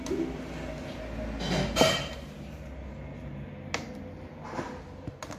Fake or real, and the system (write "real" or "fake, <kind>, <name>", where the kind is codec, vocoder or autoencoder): real